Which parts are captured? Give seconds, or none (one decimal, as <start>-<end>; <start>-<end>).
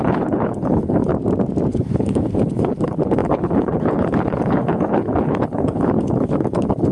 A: 1.1-1.7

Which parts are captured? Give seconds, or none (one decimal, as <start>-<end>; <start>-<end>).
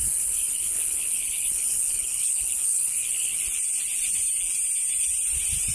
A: 3.4-5.7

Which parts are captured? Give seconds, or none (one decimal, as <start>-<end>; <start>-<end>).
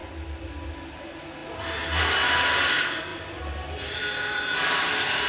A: 0.0-5.3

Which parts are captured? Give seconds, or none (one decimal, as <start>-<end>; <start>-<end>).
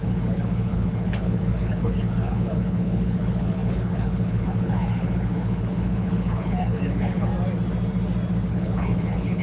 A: 7.3-8.5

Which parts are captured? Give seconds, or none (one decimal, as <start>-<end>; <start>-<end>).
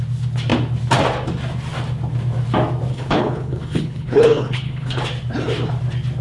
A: 0.0-2.9; 5.0-6.2